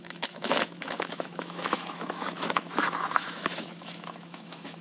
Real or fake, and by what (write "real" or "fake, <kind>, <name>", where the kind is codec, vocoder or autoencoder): fake, autoencoder, DAC-VAE